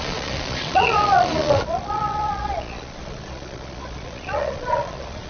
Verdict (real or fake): fake